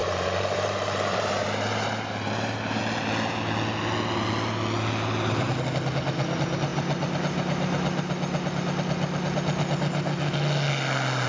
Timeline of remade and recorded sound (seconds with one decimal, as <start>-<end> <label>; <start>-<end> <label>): 0.0-2.8 remade; 2.8-11.3 recorded